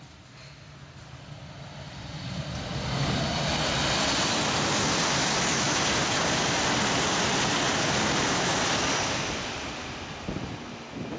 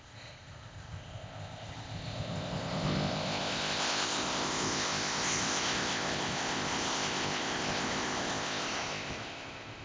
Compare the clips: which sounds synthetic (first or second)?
second